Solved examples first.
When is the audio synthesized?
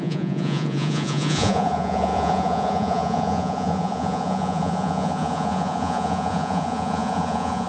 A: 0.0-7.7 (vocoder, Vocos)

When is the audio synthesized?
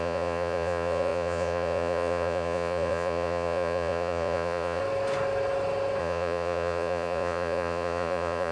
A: 0.0-4.8 (vocoder, Vocos); 6.0-8.5